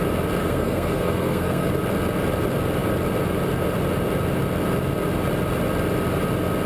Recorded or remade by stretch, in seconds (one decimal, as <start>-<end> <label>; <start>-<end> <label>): 0.0-0.4 recorded; 0.4-1.7 remade; 1.7-6.7 recorded